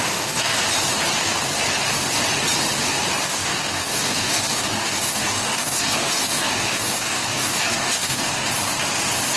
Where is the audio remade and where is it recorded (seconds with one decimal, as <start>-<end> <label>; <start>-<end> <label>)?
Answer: 0.0-0.6 remade; 0.6-3.2 recorded; 3.2-8.3 remade; 8.3-9.4 recorded